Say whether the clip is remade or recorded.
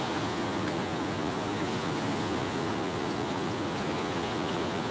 remade